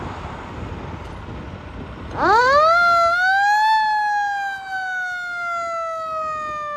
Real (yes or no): yes